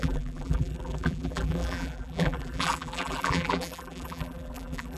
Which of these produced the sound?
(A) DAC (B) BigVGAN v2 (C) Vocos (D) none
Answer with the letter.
B